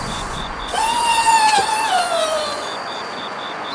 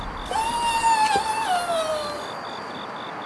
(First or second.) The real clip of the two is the second